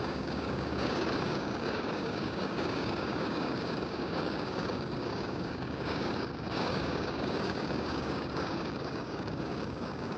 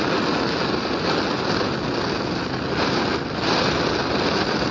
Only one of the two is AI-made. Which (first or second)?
first